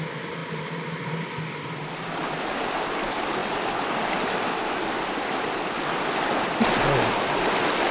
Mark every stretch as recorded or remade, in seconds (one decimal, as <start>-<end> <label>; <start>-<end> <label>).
0.0-7.9 recorded